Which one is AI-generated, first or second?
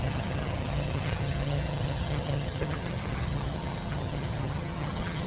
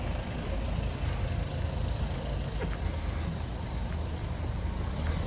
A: first